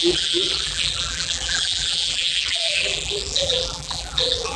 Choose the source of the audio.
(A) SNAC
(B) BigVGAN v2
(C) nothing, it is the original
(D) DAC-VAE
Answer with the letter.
B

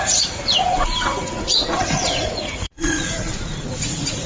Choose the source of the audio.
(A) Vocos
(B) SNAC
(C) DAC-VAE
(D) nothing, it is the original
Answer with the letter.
A